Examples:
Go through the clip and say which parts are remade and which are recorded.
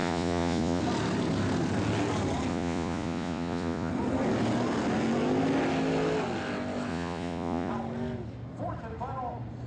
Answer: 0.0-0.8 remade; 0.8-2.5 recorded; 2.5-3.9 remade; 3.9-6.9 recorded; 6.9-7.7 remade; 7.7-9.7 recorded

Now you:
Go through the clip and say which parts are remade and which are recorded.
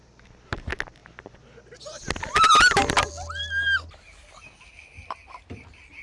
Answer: 0.0-6.0 recorded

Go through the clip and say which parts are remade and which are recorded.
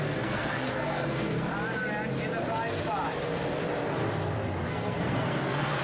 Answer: 0.0-1.5 remade; 1.5-4.7 recorded; 4.7-5.8 remade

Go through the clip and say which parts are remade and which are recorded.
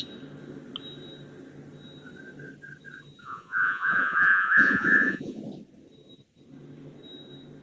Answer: 0.0-3.2 recorded; 3.2-5.4 remade; 5.4-7.6 recorded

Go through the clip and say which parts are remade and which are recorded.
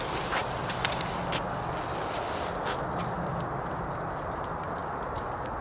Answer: 0.0-5.6 recorded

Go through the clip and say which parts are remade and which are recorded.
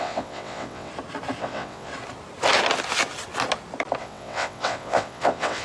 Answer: 0.0-0.9 remade; 0.9-1.4 recorded; 1.4-1.9 remade; 1.9-4.0 recorded; 4.0-5.6 remade